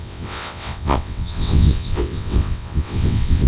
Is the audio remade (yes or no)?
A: yes